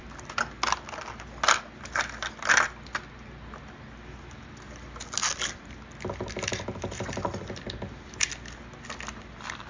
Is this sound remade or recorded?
recorded